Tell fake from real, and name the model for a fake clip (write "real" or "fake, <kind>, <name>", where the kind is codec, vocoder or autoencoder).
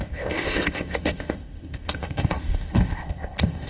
fake, codec, ZipCodec